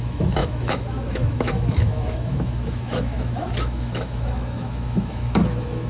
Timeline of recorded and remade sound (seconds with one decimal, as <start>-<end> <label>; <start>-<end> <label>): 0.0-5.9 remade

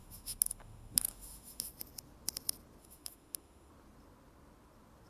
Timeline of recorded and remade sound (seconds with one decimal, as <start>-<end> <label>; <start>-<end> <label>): 0.0-1.7 remade; 1.7-2.8 recorded; 2.8-3.7 remade; 3.7-5.1 recorded

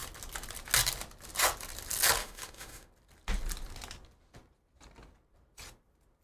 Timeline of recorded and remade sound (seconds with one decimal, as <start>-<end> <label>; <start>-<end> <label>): 0.0-2.2 recorded; 2.2-2.9 remade; 2.9-6.2 recorded

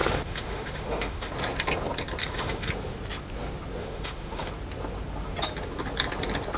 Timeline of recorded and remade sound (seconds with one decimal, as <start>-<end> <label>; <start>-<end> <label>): 0.0-1.3 remade; 1.3-2.2 recorded; 2.2-2.7 remade; 2.7-3.8 recorded; 3.8-4.5 remade; 4.5-6.6 recorded

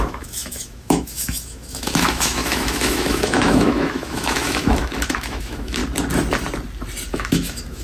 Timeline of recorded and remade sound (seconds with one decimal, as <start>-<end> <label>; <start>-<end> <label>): 0.0-5.8 remade; 5.8-7.1 recorded; 7.1-7.8 remade